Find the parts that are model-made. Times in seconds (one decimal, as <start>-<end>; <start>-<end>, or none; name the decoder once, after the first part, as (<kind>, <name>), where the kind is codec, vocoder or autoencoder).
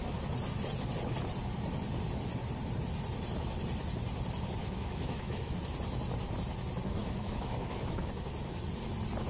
4.6-5.5 (autoencoder, DAC-VAE); 7.0-8.1